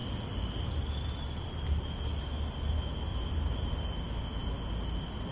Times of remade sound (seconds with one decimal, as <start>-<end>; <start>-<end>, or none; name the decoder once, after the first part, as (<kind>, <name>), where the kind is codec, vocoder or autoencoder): 0.0-2.2 (vocoder, BigVGAN v2); 3.1-3.8